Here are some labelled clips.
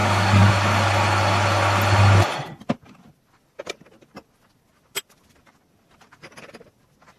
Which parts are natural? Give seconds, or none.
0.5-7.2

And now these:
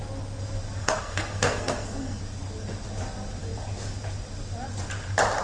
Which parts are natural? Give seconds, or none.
0.0-0.8; 2.2-5.4

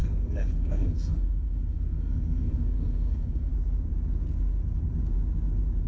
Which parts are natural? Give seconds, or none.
3.5-5.9

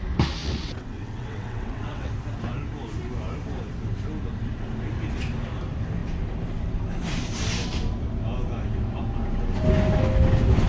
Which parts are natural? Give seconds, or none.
0.0-0.4; 2.1-10.7